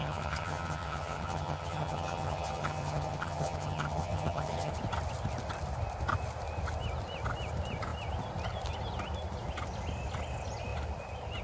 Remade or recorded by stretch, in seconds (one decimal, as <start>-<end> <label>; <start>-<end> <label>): 0.0-4.7 remade; 4.7-11.4 recorded